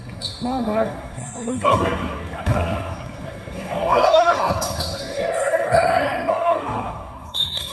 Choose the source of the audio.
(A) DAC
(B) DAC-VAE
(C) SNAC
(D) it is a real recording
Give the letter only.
C